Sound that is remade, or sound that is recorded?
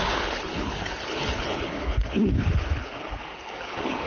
remade